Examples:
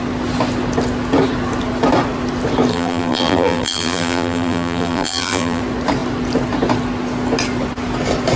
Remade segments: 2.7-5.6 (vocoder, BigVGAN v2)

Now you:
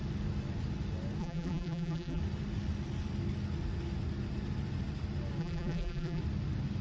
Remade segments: 1.2-2.2 (vocoder, BigVGAN v2); 5.4-6.2